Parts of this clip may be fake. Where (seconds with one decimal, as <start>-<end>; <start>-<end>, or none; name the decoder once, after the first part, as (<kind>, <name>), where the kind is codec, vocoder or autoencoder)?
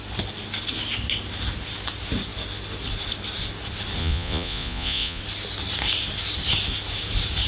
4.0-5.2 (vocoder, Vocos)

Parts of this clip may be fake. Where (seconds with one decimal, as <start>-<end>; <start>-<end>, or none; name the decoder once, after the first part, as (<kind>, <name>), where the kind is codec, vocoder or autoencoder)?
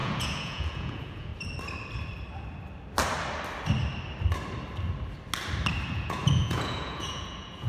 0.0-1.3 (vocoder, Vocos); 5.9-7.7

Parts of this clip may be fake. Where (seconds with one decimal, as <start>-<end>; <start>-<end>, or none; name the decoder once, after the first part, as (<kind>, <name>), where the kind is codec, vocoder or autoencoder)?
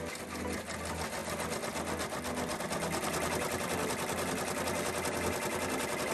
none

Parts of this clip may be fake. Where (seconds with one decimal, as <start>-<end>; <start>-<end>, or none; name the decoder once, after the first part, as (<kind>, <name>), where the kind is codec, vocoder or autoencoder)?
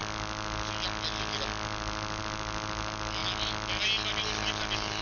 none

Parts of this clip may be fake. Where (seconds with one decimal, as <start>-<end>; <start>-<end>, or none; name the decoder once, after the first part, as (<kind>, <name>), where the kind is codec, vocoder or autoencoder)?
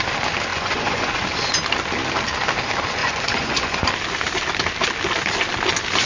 0.5-1.2 (vocoder, Vocos); 3.0-3.9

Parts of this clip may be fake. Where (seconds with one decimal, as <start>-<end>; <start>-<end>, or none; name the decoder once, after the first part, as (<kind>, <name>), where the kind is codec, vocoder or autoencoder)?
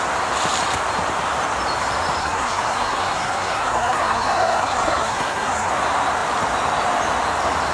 2.2-5.7 (codec, SNAC)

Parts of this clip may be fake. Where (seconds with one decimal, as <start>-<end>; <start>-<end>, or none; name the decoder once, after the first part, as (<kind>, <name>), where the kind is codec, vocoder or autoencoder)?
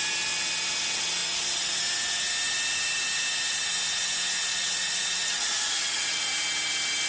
1.2-1.8 (vocoder, Vocos); 4.5-6.3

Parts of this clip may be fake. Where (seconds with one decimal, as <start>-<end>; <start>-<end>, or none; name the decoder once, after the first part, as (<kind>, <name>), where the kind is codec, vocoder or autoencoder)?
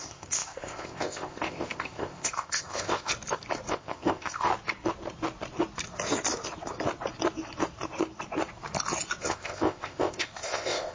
0.0-3.1 (codec, ZipCodec); 3.7-4.5; 9.2-10.9